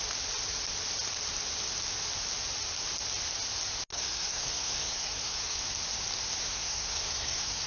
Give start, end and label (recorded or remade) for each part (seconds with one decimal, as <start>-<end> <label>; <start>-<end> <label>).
0.0-3.9 recorded; 3.9-5.6 remade; 5.6-6.4 recorded; 6.4-7.7 remade